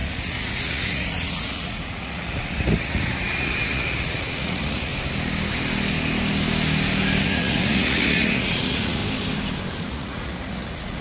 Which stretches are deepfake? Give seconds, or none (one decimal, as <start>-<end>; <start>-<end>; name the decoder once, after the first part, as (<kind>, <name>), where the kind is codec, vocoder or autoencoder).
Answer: 0.0-4.9 (vocoder, Vocos); 7.2-9.0; 9.8-11.0